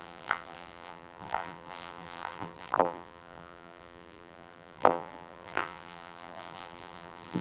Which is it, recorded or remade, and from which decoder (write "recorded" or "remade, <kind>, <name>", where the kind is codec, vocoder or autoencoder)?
remade, vocoder, BigVGAN v2